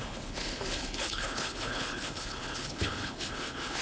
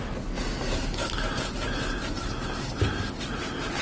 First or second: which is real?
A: second